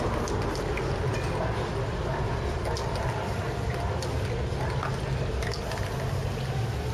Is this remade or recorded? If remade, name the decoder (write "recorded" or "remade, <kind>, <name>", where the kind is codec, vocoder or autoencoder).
recorded